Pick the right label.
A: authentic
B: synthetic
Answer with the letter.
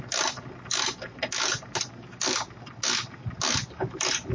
A